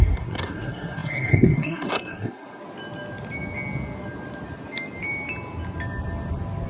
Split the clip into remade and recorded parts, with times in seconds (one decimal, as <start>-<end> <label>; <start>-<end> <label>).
0.0-2.6 remade; 2.6-6.7 recorded